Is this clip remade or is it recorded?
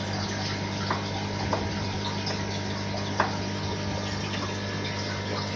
recorded